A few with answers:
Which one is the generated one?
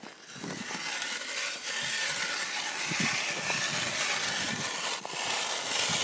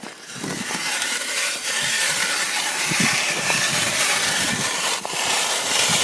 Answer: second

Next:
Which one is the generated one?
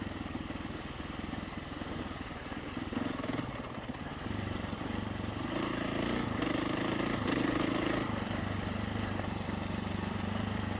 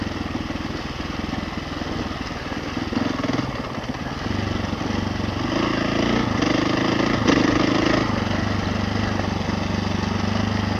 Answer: first